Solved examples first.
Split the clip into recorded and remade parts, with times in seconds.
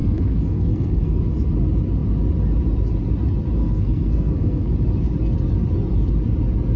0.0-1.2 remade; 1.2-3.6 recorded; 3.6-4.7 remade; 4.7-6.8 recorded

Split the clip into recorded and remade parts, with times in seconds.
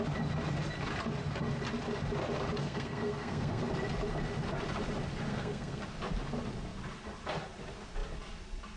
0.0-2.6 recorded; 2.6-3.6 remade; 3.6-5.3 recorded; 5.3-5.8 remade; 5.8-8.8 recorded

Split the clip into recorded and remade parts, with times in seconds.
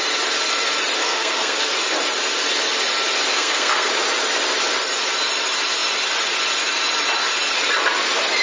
0.0-1.0 recorded; 1.0-1.7 remade; 1.7-3.3 recorded; 3.3-3.9 remade; 3.9-8.4 recorded